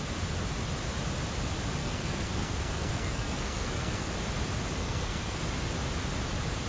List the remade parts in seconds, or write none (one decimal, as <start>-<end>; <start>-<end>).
1.8-4.1; 4.8-5.4